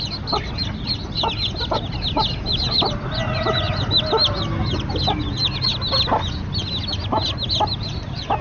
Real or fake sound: real